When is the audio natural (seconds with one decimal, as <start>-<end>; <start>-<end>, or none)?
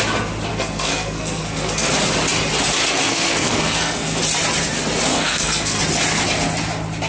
0.0-0.5; 1.9-3.0; 4.2-5.1; 5.8-7.1